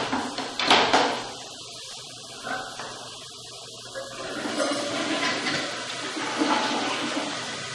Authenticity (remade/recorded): recorded